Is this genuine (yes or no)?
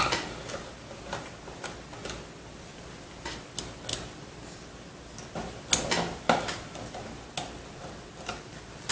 yes